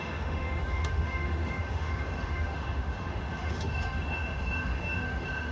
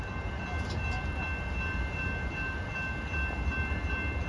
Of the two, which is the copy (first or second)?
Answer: first